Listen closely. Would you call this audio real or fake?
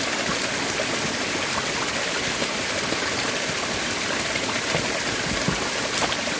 real